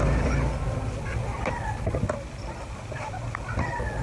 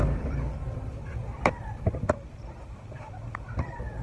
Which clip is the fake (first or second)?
second